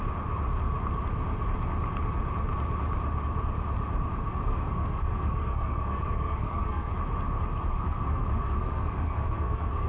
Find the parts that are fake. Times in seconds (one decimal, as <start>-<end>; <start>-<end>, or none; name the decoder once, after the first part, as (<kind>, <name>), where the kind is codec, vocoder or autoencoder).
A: 4.3-6.9 (codec, SNAC); 7.7-9.9